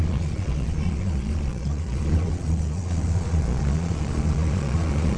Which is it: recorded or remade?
remade